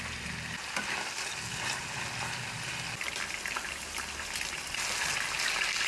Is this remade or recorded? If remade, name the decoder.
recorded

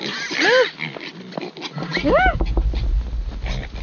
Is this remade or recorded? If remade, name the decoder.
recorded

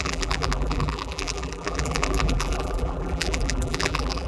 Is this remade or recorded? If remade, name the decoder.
remade, vocoder, BigVGAN v2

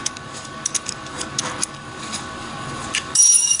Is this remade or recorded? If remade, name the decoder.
remade, codec, DAC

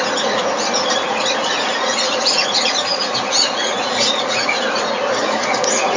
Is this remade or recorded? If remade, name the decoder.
remade, vocoder, Vocos